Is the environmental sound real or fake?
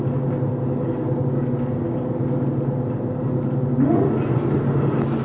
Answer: real